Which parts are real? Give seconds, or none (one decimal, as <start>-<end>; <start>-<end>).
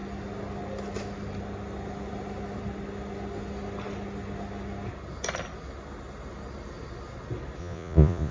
0.0-7.6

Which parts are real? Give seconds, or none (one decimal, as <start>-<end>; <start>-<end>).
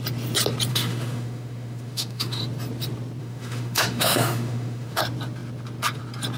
0.0-0.7; 2.4-3.2; 5.0-6.4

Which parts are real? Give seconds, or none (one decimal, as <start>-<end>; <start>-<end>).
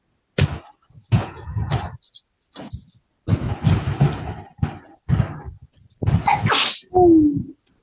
0.0-1.2; 1.7-7.8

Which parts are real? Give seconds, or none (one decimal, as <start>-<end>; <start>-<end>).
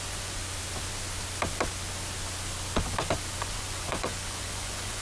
0.4-3.4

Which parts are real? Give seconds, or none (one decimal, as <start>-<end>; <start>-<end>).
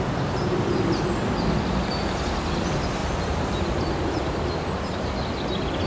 0.0-5.9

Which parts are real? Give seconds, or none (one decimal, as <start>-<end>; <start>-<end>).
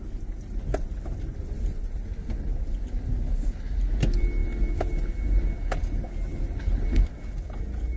0.0-8.0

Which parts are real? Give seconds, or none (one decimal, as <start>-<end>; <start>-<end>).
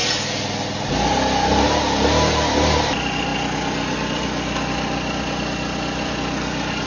0.0-6.9